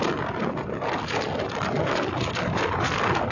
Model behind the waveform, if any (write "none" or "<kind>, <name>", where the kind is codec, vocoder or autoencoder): none